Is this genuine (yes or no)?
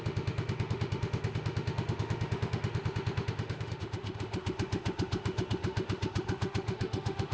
no